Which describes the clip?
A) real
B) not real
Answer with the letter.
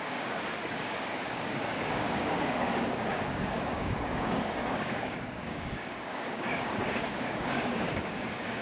B